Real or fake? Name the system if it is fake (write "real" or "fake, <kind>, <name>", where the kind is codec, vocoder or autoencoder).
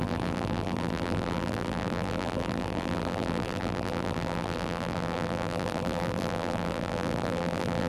fake, vocoder, BigVGAN v2